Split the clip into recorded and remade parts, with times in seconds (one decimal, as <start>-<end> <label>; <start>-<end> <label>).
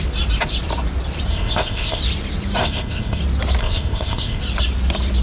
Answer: 0.0-1.3 recorded; 1.3-2.0 remade; 2.0-2.6 recorded; 2.6-3.2 remade; 3.2-3.6 recorded; 3.6-4.4 remade; 4.4-5.2 recorded